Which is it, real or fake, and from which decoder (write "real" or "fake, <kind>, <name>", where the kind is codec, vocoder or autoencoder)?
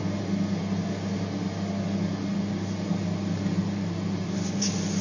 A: real